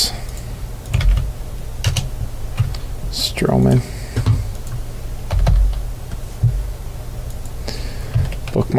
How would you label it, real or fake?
real